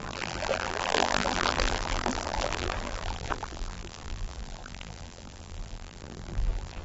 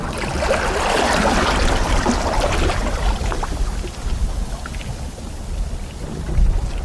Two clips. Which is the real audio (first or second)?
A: second